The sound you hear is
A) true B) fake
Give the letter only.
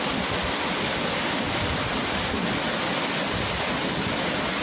A